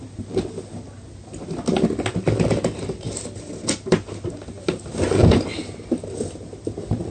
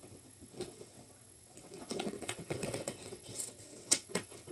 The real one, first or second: first